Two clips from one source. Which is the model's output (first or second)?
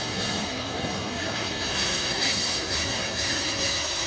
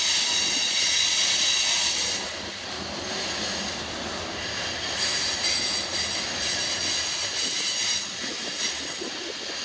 first